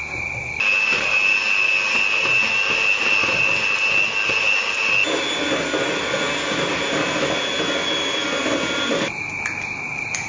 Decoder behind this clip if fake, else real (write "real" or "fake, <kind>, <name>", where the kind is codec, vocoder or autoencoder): real